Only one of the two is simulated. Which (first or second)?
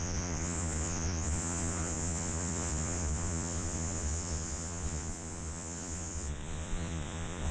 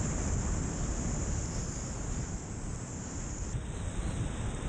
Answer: first